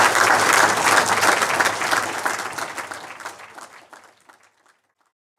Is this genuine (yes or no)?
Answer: yes